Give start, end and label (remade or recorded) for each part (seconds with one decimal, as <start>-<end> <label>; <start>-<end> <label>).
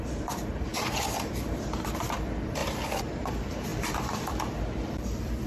0.0-2.6 remade; 2.6-3.3 recorded; 3.3-5.5 remade